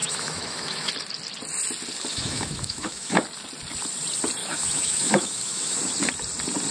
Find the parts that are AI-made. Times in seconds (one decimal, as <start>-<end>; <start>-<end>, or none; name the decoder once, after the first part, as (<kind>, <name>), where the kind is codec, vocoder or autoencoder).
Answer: 0.0-0.9 (autoencoder, DAC-VAE); 2.1-3.2; 4.4-5.8